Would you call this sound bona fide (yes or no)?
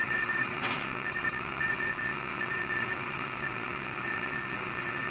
no